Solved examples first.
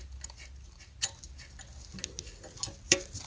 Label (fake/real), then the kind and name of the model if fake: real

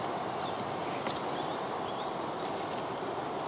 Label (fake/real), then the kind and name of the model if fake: real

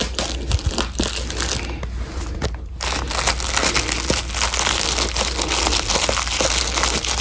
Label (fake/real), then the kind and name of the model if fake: real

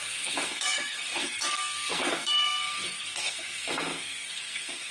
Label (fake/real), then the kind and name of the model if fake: fake, codec, SNAC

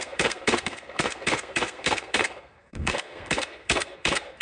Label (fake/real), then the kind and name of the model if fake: fake, codec, SNAC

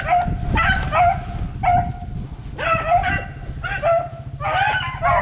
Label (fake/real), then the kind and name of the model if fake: real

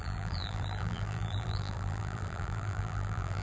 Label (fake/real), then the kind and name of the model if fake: fake, vocoder, BigVGAN v2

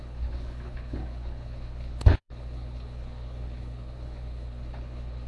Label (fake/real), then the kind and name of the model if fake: fake, codec, HILCodec